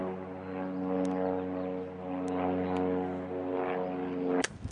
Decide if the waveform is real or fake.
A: real